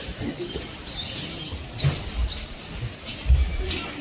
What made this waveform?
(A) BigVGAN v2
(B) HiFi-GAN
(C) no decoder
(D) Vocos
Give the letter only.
C